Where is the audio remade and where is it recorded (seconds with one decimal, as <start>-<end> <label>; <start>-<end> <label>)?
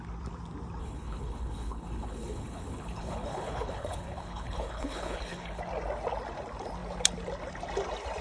0.0-0.8 recorded; 0.8-5.6 remade; 5.6-8.2 recorded